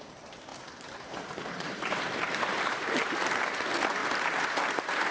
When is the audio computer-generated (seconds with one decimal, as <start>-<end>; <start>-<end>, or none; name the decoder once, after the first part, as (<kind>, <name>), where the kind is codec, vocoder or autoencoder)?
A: 0.0-4.0 (vocoder, BigVGAN v2); 4.6-5.1